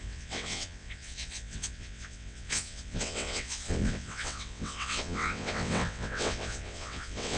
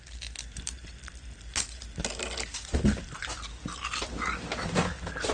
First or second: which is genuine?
second